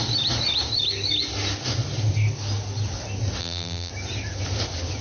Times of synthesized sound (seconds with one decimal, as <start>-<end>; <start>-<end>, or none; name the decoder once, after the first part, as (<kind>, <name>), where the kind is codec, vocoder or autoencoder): 3.4-3.9 (vocoder, BigVGAN v2)